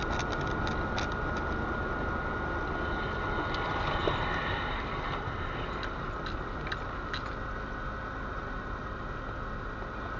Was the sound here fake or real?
real